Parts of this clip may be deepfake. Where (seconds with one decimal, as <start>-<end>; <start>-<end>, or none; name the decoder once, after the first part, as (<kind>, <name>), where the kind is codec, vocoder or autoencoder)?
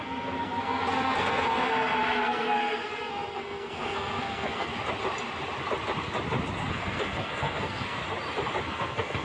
0.0-4.7 (codec, SNAC); 6.7-8.0; 8.6-9.2